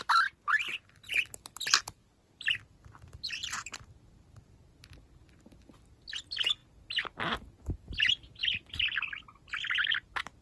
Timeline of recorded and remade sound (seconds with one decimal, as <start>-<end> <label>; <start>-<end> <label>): 0.0-2.0 recorded; 2.0-4.7 remade; 4.7-10.4 recorded